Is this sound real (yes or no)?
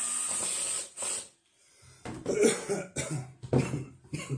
yes